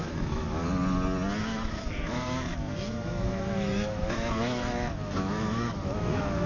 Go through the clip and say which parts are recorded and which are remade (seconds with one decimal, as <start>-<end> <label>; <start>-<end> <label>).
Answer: 0.0-0.6 remade; 0.6-1.4 recorded; 1.4-6.5 remade